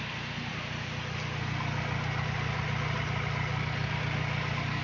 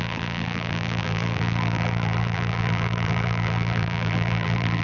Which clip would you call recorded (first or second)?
first